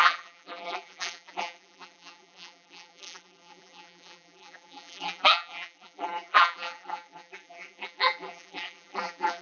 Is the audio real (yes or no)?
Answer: no